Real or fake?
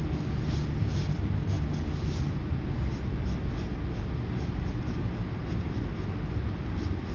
real